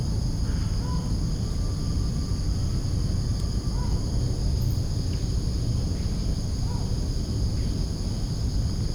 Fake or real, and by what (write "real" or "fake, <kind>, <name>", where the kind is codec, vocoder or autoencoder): real